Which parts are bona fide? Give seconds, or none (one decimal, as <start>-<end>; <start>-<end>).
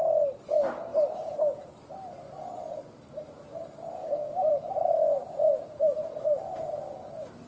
0.0-4.0; 4.5-7.5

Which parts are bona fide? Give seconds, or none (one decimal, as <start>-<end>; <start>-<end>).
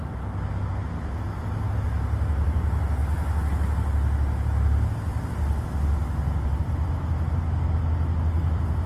0.0-8.9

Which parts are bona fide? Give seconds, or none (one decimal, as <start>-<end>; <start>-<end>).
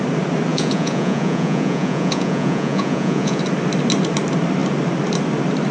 0.0-0.5; 3.4-5.7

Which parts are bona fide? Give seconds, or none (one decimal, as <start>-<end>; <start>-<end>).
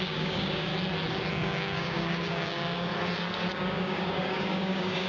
0.7-1.3; 2.9-3.5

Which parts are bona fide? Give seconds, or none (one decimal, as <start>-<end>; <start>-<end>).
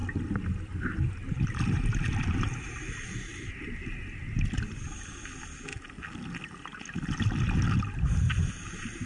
0.0-0.8; 3.8-5.3; 5.7-8.5